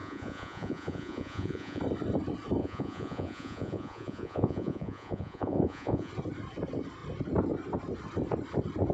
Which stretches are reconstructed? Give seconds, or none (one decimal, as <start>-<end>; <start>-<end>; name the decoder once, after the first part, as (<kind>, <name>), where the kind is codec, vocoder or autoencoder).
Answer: 0.0-1.8 (vocoder, Vocos); 2.6-6.1

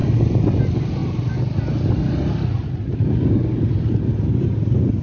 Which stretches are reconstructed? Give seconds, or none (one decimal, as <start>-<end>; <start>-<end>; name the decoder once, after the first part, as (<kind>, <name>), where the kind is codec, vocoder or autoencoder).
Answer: none

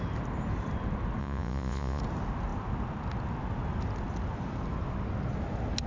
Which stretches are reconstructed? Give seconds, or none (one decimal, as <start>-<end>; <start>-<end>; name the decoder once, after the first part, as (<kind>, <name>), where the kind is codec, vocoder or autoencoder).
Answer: 1.2-2.0 (vocoder, Vocos)

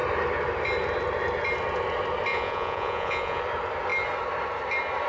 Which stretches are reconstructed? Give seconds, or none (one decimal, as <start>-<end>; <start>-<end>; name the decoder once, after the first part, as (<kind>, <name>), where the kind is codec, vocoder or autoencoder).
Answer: 2.3-3.4 (vocoder, Vocos)

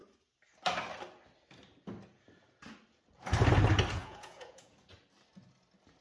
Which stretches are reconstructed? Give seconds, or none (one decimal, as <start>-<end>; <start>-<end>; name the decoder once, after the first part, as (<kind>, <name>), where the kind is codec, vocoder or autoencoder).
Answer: 4.0-4.7 (vocoder, Vocos)

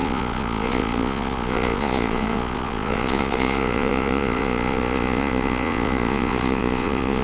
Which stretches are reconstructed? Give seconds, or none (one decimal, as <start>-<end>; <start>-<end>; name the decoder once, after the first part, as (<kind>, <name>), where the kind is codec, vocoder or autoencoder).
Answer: 0.0-7.2 (vocoder, Vocos)

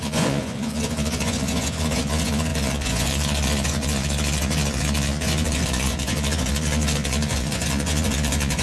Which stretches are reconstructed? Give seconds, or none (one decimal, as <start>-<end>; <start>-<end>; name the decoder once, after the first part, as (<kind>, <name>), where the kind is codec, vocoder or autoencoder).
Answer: 0.0-8.6 (vocoder, Vocos)